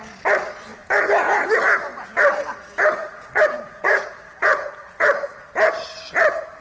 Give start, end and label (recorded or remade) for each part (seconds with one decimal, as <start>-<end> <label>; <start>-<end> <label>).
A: 0.0-3.0 recorded; 3.0-5.5 remade; 5.5-6.6 recorded